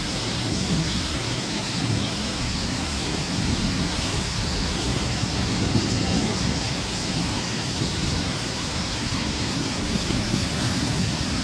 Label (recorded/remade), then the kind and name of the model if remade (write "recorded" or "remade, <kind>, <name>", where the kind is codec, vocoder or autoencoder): remade, codec, SNAC